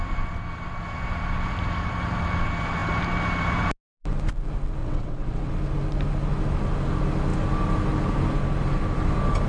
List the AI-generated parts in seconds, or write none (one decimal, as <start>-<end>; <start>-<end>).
4.8-5.5